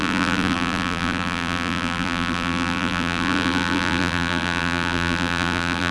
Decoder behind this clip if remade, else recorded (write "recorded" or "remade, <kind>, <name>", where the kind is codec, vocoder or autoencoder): remade, vocoder, BigVGAN v2